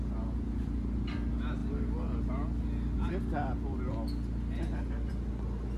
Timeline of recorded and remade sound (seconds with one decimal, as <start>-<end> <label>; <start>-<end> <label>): 0.0-5.8 recorded